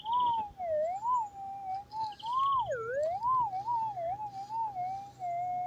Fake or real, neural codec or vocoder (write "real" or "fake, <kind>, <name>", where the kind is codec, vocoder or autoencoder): real